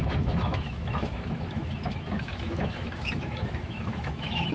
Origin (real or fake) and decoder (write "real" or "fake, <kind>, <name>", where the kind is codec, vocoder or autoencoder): fake, autoencoder, DAC-VAE